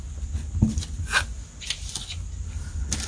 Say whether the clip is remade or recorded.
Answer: recorded